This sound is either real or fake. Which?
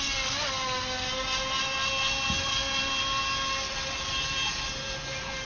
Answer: real